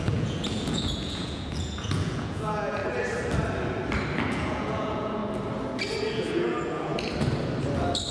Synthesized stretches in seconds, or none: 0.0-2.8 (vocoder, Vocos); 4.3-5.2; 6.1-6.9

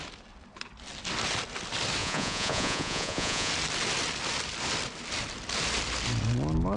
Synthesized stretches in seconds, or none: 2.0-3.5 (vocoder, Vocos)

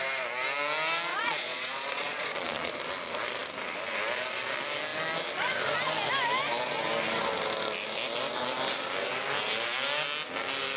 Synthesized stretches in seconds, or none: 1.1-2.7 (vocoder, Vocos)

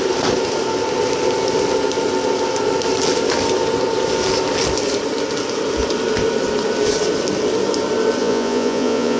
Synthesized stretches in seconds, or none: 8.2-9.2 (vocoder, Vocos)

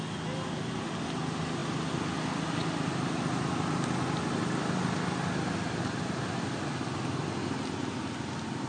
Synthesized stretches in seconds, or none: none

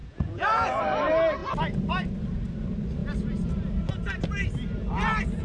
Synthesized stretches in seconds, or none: 0.0-0.8 (vocoder, Vocos)

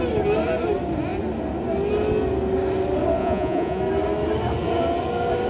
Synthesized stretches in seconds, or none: 3.2-3.8 (vocoder, Vocos)

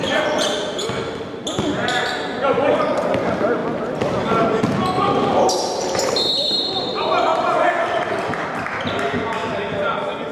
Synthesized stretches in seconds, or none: none